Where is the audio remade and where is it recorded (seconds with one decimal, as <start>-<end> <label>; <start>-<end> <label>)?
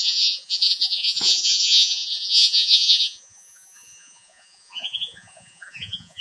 0.0-6.2 remade